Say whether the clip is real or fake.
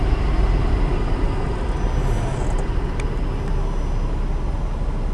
real